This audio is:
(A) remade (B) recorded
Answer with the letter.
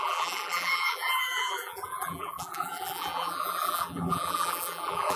A